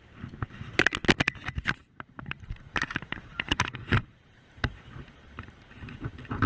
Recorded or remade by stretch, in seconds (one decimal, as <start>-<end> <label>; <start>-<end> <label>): 0.0-1.8 recorded; 1.8-5.7 remade; 5.7-6.5 recorded